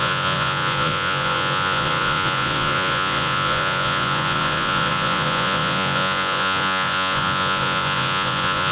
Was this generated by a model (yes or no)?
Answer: yes